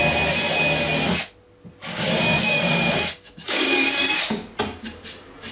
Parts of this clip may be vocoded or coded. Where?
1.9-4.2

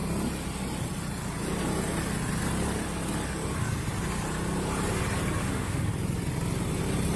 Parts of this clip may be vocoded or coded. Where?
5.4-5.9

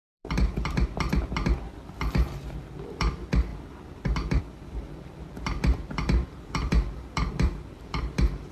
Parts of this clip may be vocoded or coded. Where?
0.0-8.5

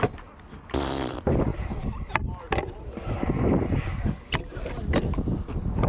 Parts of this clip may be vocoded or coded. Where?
none